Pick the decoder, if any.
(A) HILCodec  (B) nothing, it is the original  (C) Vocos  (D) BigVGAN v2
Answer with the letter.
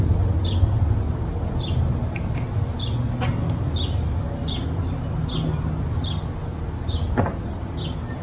B